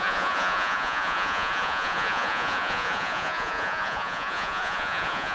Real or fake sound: fake